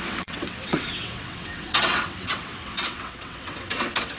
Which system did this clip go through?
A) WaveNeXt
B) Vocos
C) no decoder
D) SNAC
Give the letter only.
A